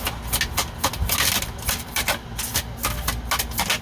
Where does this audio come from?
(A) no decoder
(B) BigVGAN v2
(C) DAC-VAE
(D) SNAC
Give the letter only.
A